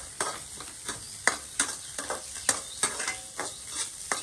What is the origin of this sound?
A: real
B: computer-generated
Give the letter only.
A